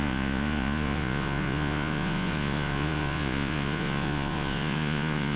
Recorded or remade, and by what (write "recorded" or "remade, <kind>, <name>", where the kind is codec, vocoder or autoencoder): remade, vocoder, Vocos